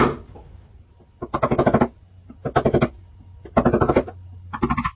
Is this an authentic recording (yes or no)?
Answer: yes